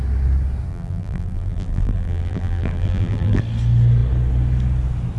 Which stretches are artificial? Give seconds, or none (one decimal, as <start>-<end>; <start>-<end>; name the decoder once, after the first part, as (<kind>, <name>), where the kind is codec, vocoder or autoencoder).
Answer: 0.7-3.4 (vocoder, BigVGAN v2)

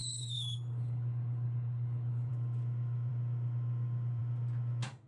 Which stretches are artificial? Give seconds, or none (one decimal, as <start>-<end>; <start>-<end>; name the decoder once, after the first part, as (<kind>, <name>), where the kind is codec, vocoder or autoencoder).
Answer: 0.0-2.3 (codec, HILCodec)

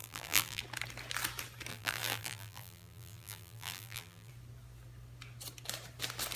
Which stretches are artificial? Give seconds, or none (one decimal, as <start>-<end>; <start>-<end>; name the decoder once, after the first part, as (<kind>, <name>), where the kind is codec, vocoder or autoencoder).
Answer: 0.0-0.6 (vocoder, BigVGAN v2); 1.7-4.3

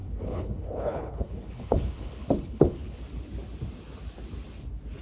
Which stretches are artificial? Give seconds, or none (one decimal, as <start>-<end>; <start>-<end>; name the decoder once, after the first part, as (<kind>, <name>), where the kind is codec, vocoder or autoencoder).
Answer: 0.0-3.0 (codec, HILCodec)

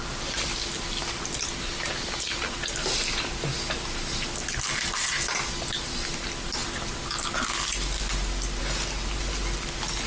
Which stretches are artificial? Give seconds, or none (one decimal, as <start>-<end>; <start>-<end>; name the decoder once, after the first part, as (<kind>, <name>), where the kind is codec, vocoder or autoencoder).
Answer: none